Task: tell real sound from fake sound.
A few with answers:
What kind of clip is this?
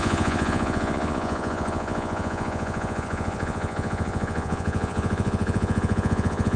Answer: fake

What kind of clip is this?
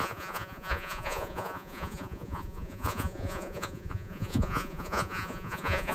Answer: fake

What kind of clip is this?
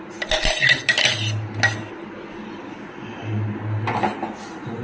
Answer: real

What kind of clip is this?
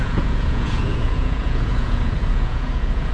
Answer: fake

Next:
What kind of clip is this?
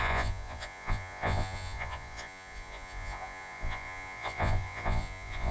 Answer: fake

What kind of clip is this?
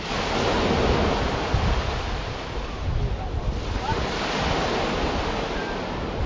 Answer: real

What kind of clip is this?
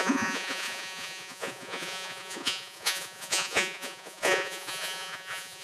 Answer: fake